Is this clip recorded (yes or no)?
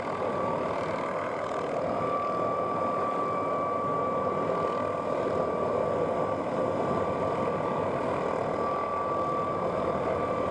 yes